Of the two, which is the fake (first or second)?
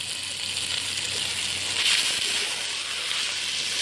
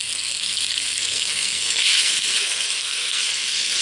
second